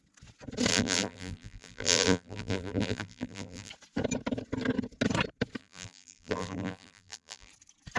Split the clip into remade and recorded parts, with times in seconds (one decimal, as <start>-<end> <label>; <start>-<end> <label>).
0.0-0.7 recorded; 0.7-3.7 remade; 3.7-5.6 recorded; 5.6-7.5 remade; 7.5-8.0 recorded